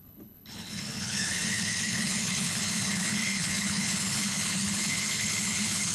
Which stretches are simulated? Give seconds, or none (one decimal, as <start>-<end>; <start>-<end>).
0.0-5.9